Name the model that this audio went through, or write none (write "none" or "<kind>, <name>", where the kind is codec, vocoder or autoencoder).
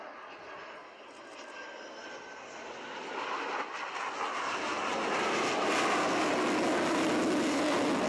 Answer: none